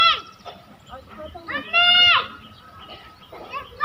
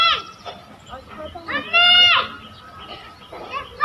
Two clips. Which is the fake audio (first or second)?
first